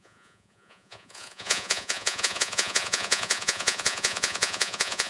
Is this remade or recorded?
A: remade